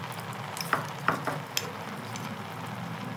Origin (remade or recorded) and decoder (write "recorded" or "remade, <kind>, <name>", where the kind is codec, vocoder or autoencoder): recorded